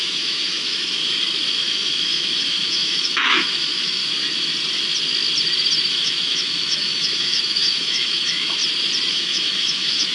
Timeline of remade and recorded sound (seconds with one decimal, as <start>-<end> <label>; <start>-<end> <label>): 0.0-1.0 remade; 1.0-1.5 recorded; 1.5-4.0 remade; 4.0-5.9 recorded; 5.9-8.6 remade; 8.6-9.1 recorded; 9.1-10.1 remade